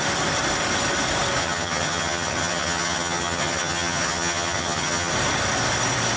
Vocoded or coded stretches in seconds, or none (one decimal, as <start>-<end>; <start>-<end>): 1.4-5.1